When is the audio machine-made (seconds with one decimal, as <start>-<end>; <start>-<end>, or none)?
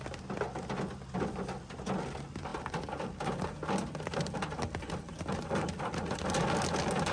none